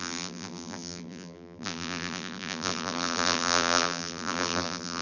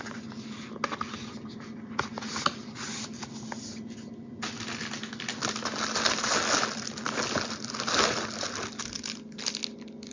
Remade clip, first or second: first